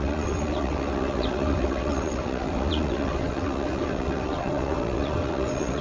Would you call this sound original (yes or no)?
no